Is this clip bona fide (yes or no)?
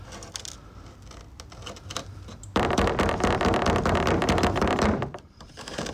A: no